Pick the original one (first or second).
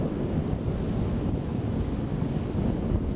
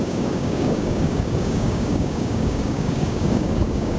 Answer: first